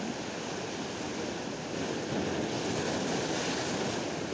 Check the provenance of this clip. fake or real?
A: real